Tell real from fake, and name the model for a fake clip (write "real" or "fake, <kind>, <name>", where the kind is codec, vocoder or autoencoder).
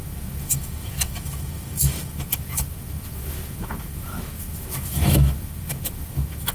fake, autoencoder, DAC-VAE